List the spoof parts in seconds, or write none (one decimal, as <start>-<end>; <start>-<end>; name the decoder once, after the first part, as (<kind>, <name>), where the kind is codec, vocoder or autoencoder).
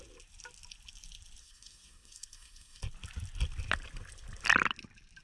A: 1.4-2.8 (codec, SNAC)